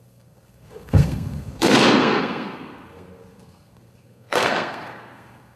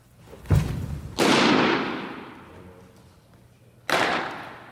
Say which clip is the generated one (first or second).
first